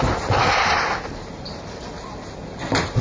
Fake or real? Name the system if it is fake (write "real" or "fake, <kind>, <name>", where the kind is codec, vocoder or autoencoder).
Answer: real